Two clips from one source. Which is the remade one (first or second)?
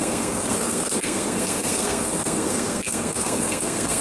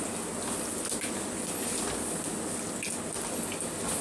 first